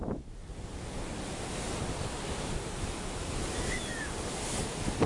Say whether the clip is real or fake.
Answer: real